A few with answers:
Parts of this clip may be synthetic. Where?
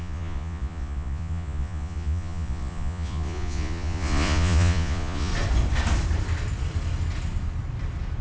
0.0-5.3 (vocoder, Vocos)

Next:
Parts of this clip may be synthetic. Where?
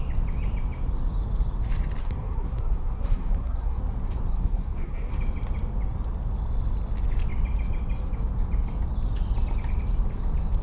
2.0-3.8 (codec, SNAC); 4.3-5.1